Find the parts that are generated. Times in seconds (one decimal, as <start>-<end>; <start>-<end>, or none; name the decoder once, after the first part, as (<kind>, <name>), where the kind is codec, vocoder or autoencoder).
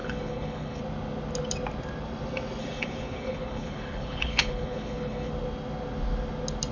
0.0-0.8 (codec, HILCodec); 2.6-5.3